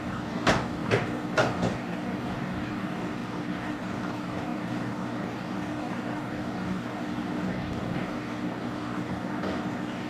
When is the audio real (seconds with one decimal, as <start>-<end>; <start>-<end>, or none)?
none